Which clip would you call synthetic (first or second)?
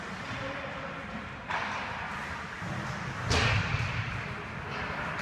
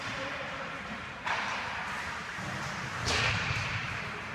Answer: second